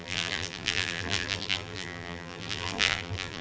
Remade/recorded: remade